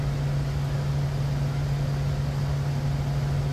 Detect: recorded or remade recorded